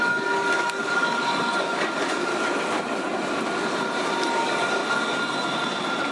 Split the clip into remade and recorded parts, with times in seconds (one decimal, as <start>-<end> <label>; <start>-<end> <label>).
0.0-2.3 remade; 2.3-4.3 recorded; 4.3-4.8 remade; 4.8-6.1 recorded